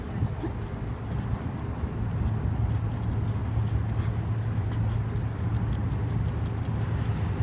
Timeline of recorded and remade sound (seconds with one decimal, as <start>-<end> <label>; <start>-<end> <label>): 0.0-7.4 recorded